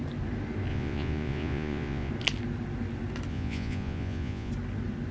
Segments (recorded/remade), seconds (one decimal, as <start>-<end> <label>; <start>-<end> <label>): 0.0-0.7 recorded; 0.7-2.1 remade; 2.1-3.3 recorded; 3.3-4.5 remade; 4.5-5.1 recorded